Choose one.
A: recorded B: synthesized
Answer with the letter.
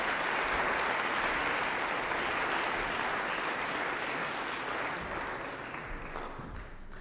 A